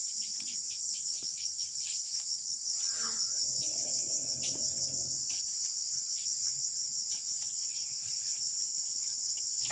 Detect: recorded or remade remade